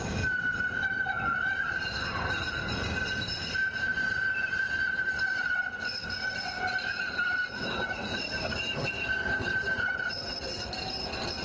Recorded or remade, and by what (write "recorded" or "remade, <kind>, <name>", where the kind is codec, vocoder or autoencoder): recorded